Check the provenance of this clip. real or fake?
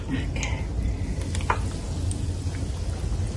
real